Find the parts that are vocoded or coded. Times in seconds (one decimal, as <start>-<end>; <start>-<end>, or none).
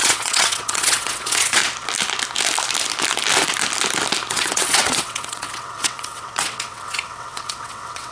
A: 0.0-1.6; 4.3-8.1